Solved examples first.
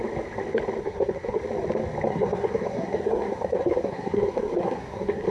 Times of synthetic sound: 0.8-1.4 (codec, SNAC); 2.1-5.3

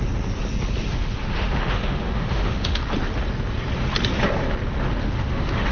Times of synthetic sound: 0.9-2.8 (autoencoder, DAC-VAE); 5.0-5.7

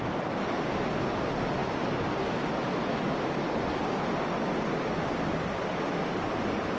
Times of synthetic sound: none

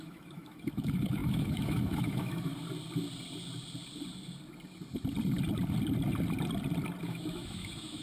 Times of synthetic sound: 0.0-2.5 (autoencoder, DAC-VAE); 7.0-8.0